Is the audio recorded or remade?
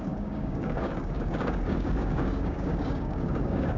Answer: remade